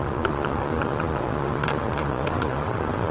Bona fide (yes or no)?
no